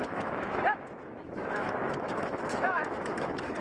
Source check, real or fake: fake